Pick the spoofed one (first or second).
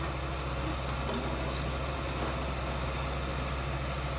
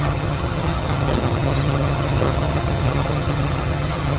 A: second